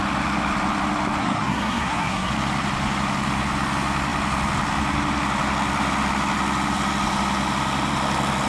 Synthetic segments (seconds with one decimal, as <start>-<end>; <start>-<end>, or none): 1.2-2.3